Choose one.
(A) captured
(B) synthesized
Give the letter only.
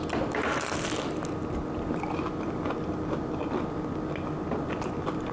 A